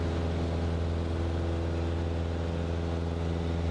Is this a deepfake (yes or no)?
no